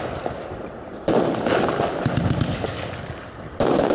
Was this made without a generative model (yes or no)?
yes